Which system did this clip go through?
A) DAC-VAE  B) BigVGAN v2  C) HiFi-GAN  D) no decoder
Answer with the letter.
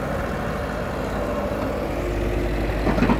D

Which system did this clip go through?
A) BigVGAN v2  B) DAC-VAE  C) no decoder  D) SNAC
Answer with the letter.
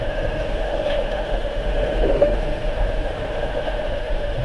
B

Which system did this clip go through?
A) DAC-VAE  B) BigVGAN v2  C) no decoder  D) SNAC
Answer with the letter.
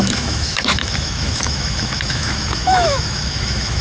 A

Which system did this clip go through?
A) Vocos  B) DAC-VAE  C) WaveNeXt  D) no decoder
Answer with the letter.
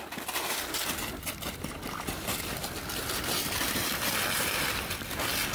D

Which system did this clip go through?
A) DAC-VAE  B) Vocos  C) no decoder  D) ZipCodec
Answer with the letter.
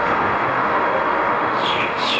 A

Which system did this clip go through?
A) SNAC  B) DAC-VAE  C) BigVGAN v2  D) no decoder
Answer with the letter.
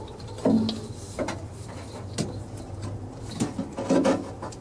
D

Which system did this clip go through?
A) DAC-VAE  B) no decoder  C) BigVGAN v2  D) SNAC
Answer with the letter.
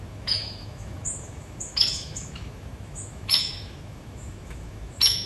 A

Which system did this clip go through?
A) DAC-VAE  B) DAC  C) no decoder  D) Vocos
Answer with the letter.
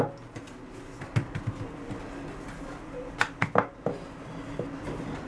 C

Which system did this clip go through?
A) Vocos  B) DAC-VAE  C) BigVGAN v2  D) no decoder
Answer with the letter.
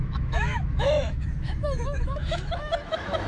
B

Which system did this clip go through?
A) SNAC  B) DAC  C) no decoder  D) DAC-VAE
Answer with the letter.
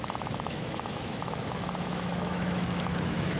D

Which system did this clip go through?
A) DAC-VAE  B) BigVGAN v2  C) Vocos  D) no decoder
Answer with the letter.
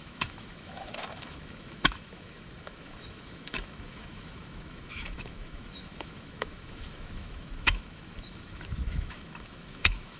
A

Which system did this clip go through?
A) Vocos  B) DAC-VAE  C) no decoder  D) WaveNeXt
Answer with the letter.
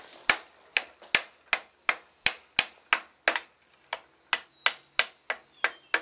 C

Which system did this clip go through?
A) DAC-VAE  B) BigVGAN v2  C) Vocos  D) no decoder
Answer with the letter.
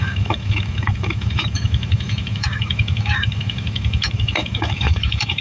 A